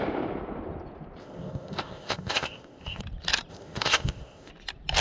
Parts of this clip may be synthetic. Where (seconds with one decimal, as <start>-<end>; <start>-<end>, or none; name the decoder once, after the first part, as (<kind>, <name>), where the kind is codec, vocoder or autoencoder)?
1.2-3.0 (codec, ZipCodec); 3.5-4.5